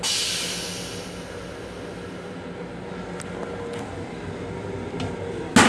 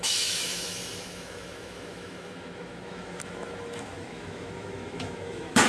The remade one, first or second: second